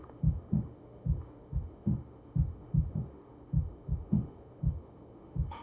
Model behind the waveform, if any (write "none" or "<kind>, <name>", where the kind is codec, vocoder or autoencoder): autoencoder, DAC-VAE